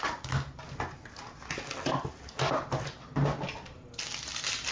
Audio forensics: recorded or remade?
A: recorded